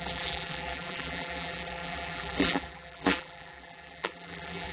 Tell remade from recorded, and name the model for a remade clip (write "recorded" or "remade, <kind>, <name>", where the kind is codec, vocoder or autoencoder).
remade, vocoder, BigVGAN v2